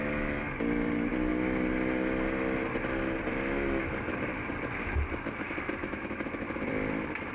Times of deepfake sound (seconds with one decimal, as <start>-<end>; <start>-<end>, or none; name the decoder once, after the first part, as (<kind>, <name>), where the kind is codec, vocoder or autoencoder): 5.8-6.7 (autoencoder, DAC-VAE)